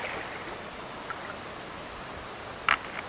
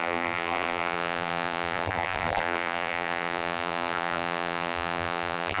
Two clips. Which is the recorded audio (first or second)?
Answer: first